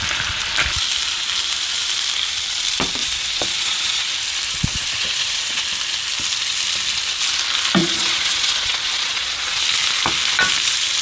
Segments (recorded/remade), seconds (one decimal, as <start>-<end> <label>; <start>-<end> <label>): 0.0-3.0 recorded; 3.0-4.1 remade; 4.1-4.7 recorded; 4.7-5.6 remade; 5.6-7.8 recorded; 7.8-9.6 remade; 9.6-11.0 recorded